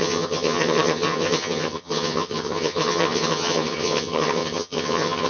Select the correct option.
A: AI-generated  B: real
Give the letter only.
A